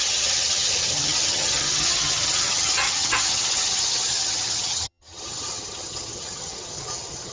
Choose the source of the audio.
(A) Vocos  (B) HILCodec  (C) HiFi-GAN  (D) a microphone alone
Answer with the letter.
C